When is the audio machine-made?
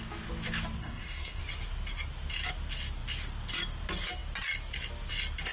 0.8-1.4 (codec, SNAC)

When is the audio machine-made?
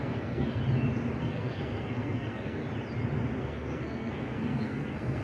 0.0-0.6 (codec, SNAC); 1.2-2.6; 3.4-5.2